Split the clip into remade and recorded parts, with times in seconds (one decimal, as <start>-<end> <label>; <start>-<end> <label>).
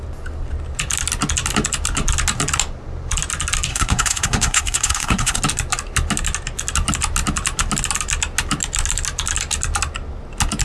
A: 0.0-3.7 recorded; 3.7-5.4 remade; 5.4-10.6 recorded